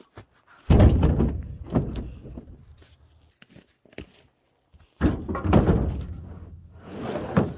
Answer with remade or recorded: recorded